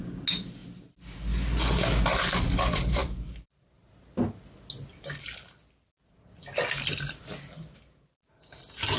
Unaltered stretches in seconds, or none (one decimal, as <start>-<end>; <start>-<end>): 0.0-3.0; 3.9-9.0